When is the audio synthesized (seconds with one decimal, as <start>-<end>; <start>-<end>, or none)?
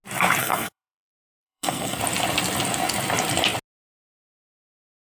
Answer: 0.4-2.0